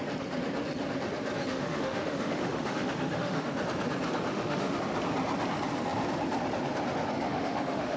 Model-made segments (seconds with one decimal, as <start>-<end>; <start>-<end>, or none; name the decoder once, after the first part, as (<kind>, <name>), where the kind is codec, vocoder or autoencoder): 1.5-3.5 (autoencoder, DAC-VAE); 4.3-4.8; 7.3-8.0